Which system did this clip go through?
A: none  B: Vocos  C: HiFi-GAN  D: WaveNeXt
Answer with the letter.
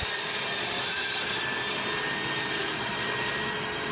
A